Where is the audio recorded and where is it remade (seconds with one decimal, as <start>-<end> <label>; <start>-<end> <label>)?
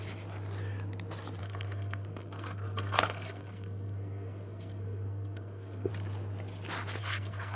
0.0-1.4 recorded; 1.4-5.9 remade; 5.9-7.0 recorded; 7.0-7.6 remade